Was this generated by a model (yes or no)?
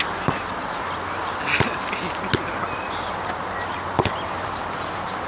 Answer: no